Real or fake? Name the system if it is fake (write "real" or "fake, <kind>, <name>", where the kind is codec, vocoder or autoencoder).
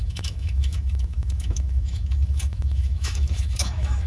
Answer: fake, autoencoder, DAC-VAE